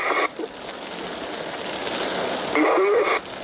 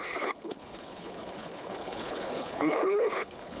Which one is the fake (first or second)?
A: second